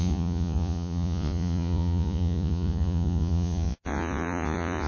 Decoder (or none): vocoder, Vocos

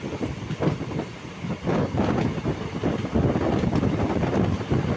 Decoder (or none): none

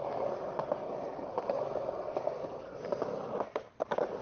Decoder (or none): none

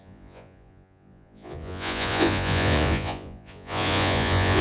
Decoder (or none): vocoder, Vocos